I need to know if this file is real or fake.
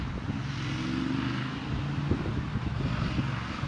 real